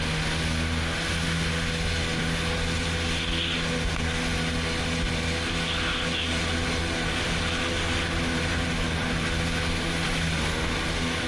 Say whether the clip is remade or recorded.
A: recorded